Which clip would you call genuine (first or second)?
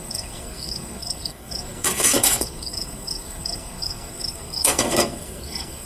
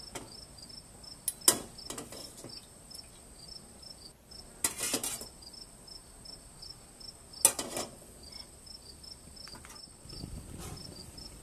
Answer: second